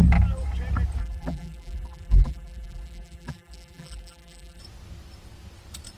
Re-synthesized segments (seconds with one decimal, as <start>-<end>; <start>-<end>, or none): 1.0-4.6